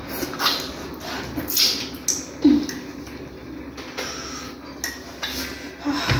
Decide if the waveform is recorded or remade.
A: recorded